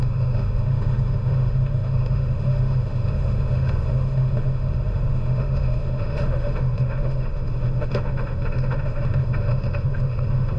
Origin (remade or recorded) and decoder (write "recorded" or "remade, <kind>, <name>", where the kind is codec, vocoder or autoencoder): remade, autoencoder, DAC-VAE